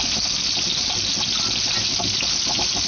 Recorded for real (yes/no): yes